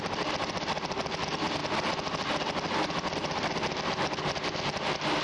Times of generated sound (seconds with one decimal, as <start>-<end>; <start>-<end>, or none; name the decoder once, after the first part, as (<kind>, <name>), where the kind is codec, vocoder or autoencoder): none